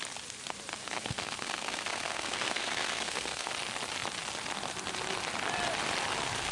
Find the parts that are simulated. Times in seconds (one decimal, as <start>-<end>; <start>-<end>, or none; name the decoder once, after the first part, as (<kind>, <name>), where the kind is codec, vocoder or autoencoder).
0.8-3.5 (codec, SNAC)